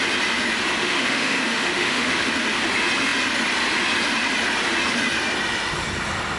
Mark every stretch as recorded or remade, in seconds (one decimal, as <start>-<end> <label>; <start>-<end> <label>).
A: 0.0-0.8 recorded; 0.8-2.3 remade; 2.3-6.4 recorded